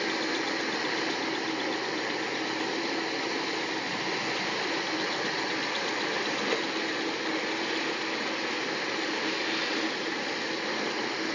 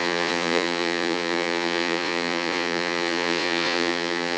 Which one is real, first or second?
first